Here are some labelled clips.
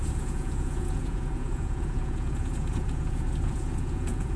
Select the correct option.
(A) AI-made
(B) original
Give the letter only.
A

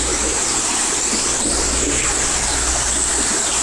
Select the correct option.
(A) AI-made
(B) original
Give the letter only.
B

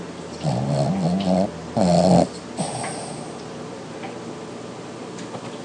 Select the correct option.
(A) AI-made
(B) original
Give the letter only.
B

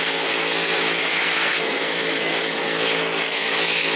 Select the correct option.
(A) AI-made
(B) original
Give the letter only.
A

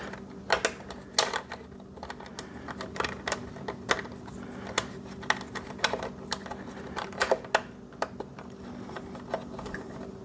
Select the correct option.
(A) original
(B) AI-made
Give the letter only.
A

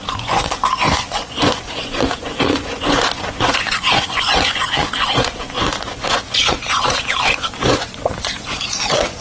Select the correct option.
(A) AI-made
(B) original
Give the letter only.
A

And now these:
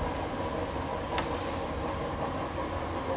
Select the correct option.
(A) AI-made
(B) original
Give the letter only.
B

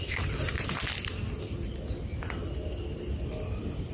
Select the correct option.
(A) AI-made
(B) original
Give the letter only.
B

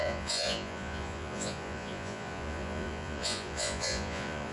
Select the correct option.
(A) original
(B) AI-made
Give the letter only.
B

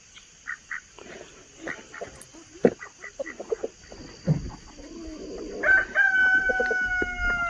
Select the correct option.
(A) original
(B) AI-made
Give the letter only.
A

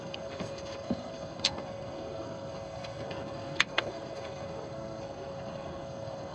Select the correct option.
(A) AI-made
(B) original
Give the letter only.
A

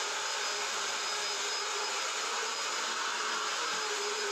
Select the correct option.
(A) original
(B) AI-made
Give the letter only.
A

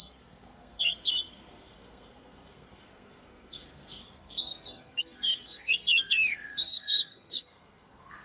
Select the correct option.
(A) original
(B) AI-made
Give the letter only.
B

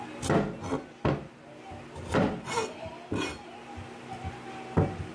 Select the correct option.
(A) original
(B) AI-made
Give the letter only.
A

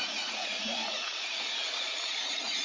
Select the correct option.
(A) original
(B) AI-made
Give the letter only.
B